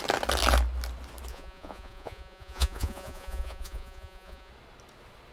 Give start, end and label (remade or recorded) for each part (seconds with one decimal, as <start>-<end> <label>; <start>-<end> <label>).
0.0-1.3 recorded; 1.3-4.5 remade; 4.5-5.3 recorded